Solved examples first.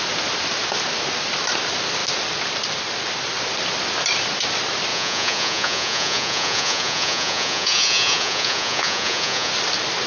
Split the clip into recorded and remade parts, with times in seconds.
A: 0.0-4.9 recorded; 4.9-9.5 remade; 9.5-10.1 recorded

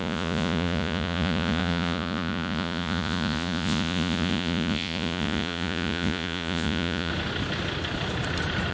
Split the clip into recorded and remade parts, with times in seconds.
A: 0.0-7.1 remade; 7.1-8.7 recorded

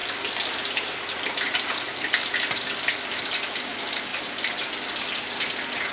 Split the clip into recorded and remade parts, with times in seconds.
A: 0.0-4.1 recorded; 4.1-4.7 remade; 4.7-5.9 recorded

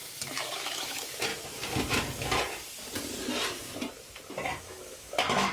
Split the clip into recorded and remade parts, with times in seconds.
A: 0.0-1.3 remade; 1.3-4.6 recorded; 4.6-5.5 remade

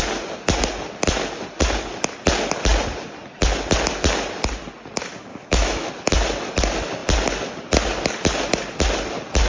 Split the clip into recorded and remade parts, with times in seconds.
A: 0.0-5.3 recorded; 5.3-5.9 remade; 5.9-9.5 recorded

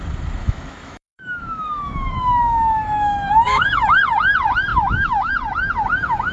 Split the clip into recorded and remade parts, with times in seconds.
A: 0.0-0.4 recorded; 0.4-4.0 remade; 4.0-4.7 recorded; 4.7-5.3 remade; 5.3-6.3 recorded

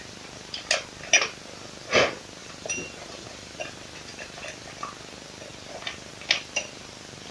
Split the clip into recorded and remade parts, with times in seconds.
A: 0.0-2.4 recorded; 2.4-3.6 remade; 3.6-4.1 recorded; 4.1-4.7 remade; 4.7-7.3 recorded